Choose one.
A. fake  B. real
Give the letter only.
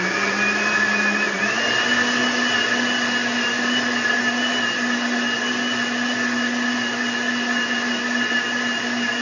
B